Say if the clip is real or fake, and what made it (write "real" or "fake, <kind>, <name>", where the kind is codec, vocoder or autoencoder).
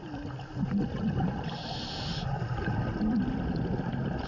real